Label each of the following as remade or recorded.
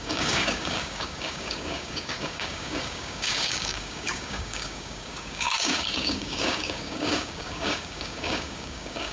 remade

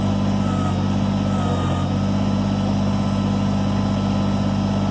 recorded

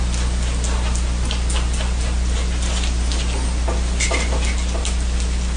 recorded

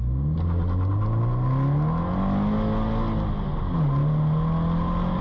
recorded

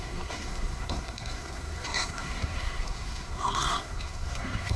remade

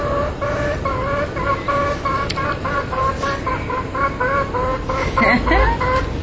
recorded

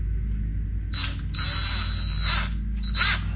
recorded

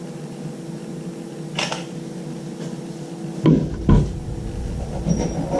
recorded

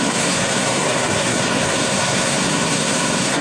remade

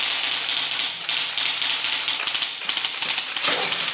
recorded